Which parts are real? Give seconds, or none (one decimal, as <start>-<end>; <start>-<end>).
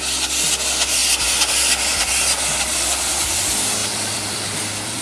0.0-3.8